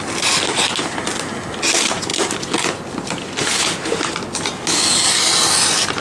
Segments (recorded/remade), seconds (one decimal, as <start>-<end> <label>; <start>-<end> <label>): 0.0-6.0 recorded